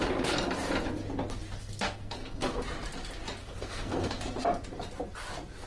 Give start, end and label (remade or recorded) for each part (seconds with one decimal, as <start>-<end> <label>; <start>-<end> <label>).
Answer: 0.0-1.6 recorded; 1.6-2.6 remade; 2.6-3.4 recorded; 3.4-4.2 remade; 4.2-5.7 recorded